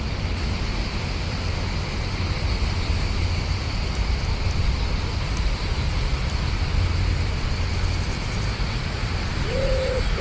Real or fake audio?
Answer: real